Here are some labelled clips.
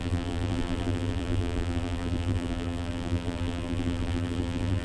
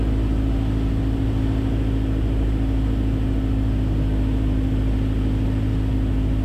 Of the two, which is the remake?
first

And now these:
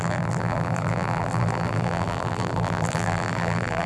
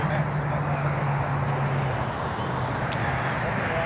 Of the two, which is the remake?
first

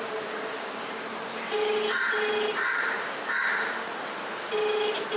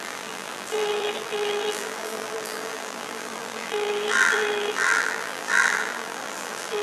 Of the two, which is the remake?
second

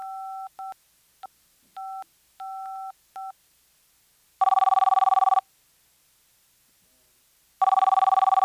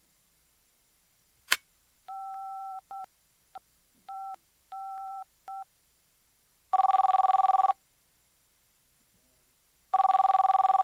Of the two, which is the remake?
second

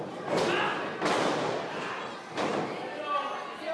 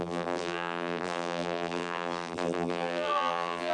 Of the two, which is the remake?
second